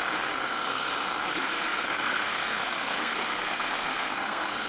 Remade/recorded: remade